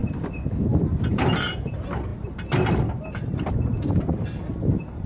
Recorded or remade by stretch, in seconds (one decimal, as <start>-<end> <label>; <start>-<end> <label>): 0.0-5.1 recorded